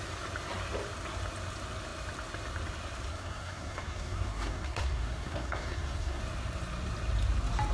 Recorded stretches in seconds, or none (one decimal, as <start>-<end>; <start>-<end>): 0.0-3.1; 6.2-7.7